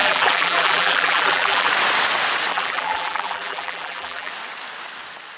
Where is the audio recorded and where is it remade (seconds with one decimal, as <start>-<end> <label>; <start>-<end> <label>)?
0.0-1.7 remade; 1.7-2.5 recorded; 2.5-4.3 remade; 4.3-5.4 recorded